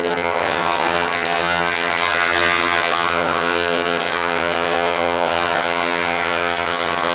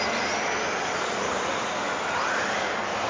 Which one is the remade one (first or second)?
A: first